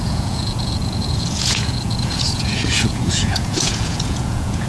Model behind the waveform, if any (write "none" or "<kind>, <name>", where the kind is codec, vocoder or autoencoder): vocoder, Vocos